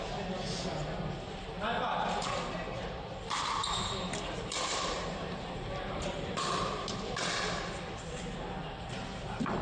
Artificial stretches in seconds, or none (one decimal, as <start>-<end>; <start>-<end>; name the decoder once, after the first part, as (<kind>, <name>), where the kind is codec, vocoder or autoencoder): 3.6-7.2 (vocoder, BigVGAN v2)